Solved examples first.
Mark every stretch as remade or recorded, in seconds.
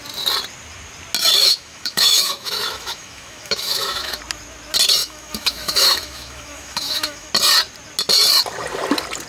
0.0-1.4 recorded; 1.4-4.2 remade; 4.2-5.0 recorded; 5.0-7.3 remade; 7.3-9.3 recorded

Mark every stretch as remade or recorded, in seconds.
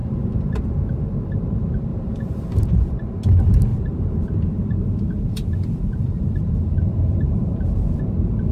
0.0-0.6 remade; 0.6-1.9 recorded; 1.9-2.6 remade; 2.6-3.7 recorded; 3.7-8.0 remade; 8.0-8.5 recorded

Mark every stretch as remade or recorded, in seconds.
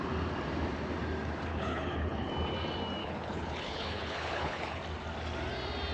0.0-1.5 recorded; 1.5-2.3 remade; 2.3-3.0 recorded; 3.0-4.8 remade; 4.8-5.9 recorded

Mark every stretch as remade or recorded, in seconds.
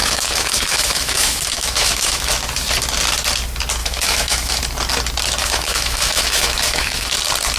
0.0-2.3 remade; 2.3-3.8 recorded; 3.8-4.6 remade; 4.6-5.4 recorded; 5.4-7.1 remade; 7.1-7.6 recorded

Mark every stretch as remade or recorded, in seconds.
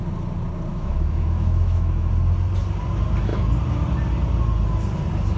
0.0-0.7 recorded; 0.7-2.1 remade; 2.1-5.4 recorded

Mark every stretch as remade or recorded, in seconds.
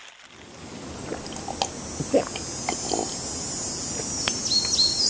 0.0-5.1 recorded